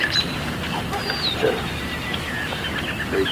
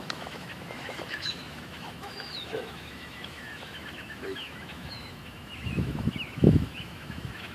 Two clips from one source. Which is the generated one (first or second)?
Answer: second